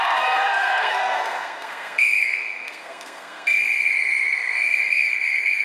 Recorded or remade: remade